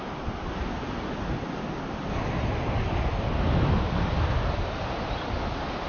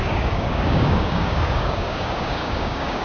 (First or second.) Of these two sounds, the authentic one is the first